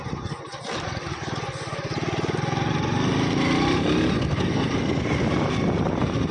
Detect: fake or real real